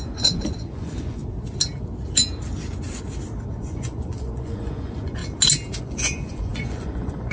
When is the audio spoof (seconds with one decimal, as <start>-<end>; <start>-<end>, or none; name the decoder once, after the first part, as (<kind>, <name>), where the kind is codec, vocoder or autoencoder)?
0.0-1.2 (vocoder, Vocos); 3.5-5.2; 5.8-7.3